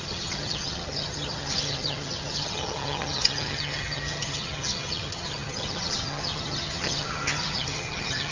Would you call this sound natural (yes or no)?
no